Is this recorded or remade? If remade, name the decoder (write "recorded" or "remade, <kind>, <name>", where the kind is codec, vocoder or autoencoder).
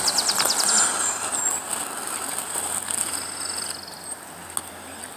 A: recorded